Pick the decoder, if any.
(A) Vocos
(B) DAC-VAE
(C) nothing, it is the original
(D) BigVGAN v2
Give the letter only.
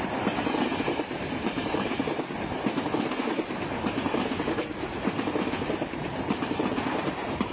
D